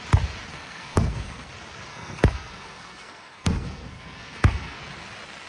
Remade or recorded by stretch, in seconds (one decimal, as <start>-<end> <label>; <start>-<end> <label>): 0.0-0.5 recorded; 0.5-1.5 remade; 1.5-1.9 recorded; 1.9-4.8 remade; 4.8-5.5 recorded